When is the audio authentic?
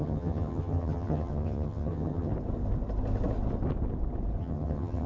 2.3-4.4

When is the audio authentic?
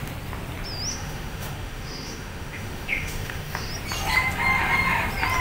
0.0-0.9; 3.7-5.4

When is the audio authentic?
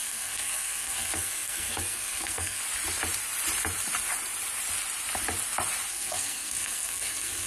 2.6-5.9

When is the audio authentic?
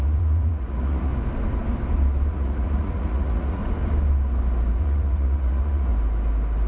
1.1-2.3; 3.6-4.8; 5.9-6.7